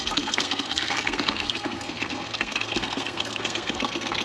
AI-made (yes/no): yes